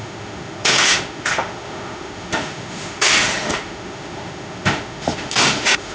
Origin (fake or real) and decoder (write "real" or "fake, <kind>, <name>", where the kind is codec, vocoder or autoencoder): fake, autoencoder, DAC-VAE